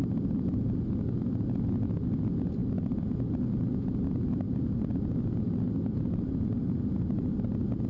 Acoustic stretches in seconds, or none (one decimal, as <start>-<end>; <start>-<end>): 0.0-7.9